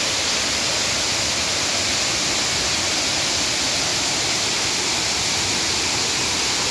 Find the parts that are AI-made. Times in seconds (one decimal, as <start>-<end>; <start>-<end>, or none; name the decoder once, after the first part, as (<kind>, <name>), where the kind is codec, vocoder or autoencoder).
3.9-4.7 (vocoder, BigVGAN v2)